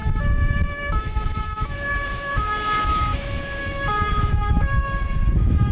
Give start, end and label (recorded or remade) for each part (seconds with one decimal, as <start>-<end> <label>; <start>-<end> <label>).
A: 0.0-5.7 remade